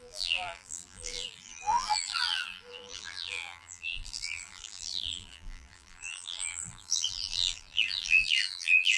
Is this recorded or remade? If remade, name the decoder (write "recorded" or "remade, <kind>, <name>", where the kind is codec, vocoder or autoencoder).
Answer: remade, vocoder, BigVGAN v2